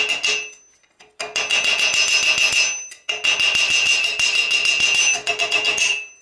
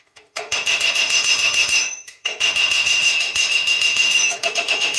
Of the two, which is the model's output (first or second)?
second